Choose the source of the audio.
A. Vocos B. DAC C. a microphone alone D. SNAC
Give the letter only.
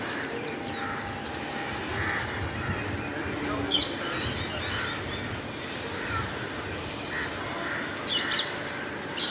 C